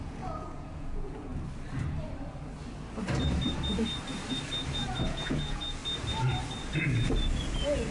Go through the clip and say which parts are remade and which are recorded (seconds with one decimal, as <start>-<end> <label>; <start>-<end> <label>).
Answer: 0.0-1.3 remade; 1.3-5.1 recorded; 5.1-5.8 remade; 5.8-7.4 recorded; 7.4-7.9 remade